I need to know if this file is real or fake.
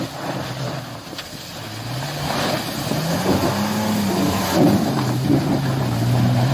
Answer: real